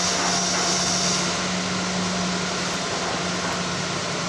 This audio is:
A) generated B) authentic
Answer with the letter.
B